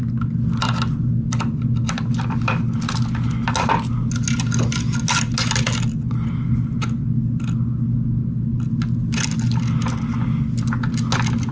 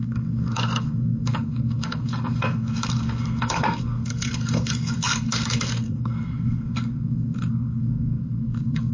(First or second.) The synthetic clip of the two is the second